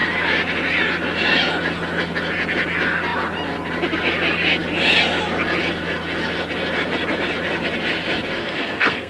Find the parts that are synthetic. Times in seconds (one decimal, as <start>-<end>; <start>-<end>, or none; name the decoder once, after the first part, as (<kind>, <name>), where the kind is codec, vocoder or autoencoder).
8.4-9.1 (codec, SNAC)